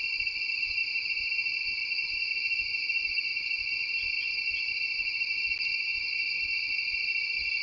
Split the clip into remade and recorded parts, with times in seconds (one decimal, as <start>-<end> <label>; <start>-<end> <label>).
0.0-7.6 recorded